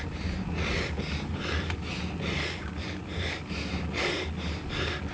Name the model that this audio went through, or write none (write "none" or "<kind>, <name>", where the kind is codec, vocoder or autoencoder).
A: none